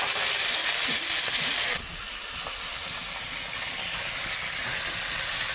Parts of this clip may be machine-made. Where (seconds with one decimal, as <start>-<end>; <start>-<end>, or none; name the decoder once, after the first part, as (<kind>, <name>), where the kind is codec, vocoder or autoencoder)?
none